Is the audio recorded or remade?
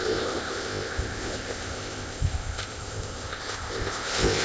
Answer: remade